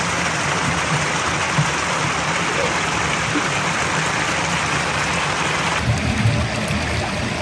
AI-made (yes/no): no